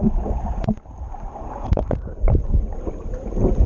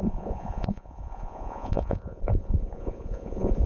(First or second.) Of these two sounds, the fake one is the second